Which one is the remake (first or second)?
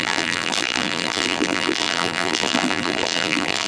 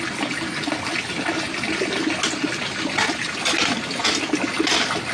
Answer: first